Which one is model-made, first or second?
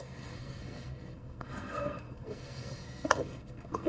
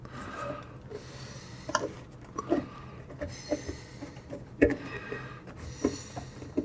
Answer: first